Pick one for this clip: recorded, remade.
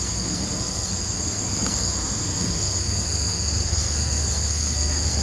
remade